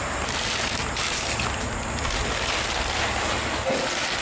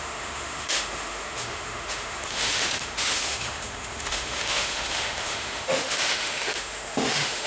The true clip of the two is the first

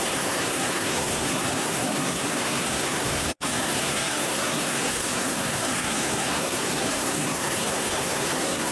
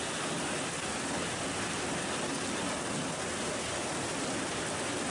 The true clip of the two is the second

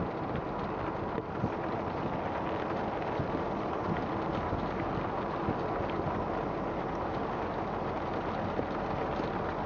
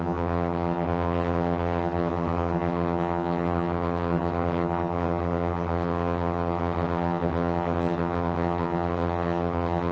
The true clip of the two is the first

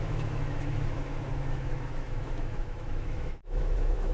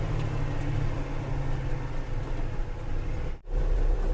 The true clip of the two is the second